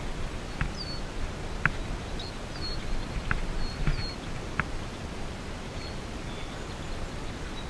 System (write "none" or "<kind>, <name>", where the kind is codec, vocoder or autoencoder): none